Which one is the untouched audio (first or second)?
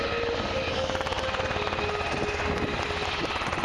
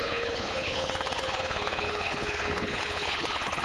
first